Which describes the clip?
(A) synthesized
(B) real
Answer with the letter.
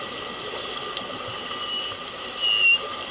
B